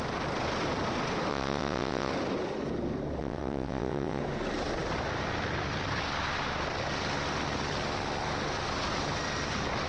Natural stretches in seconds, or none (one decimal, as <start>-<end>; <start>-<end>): 0.0-1.3; 2.1-3.2; 4.2-9.9